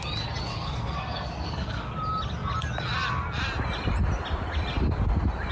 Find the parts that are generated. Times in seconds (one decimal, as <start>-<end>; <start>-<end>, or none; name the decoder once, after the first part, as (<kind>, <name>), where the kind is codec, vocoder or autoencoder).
0.5-1.9 (codec, SNAC)